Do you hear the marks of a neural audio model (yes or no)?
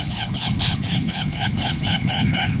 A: yes